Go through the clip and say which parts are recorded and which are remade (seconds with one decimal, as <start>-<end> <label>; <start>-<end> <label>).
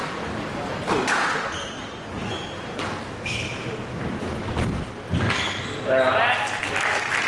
0.0-7.3 recorded